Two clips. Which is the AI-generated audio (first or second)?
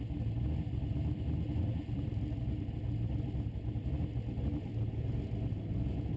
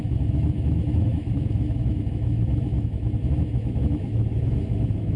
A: second